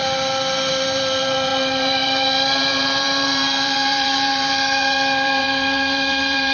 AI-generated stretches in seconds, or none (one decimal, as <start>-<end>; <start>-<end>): 0.7-6.5